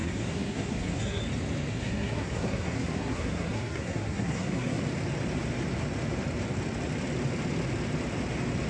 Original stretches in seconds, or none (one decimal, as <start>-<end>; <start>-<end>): 1.2-1.7; 4.8-8.7